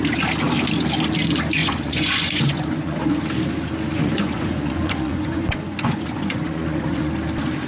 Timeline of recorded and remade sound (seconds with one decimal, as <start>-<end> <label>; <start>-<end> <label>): 0.0-1.6 recorded; 1.6-3.0 remade; 3.0-3.9 recorded; 3.9-7.1 remade; 7.1-7.7 recorded